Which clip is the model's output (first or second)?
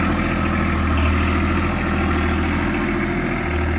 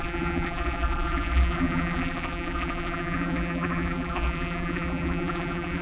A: second